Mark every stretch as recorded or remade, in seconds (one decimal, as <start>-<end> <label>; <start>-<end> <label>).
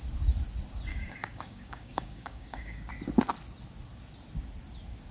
0.0-0.9 recorded; 0.9-2.9 remade; 2.9-5.1 recorded